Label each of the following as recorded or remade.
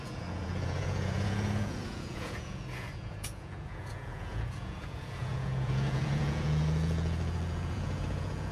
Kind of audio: remade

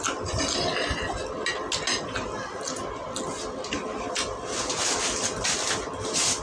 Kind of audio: recorded